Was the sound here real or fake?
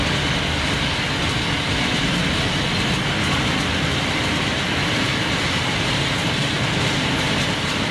real